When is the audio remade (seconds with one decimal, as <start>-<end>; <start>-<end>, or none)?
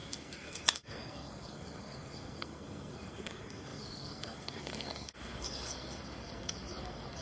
0.0-7.2